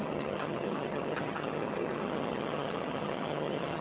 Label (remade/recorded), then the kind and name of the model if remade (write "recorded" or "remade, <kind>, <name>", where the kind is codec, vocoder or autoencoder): remade, vocoder, HiFi-GAN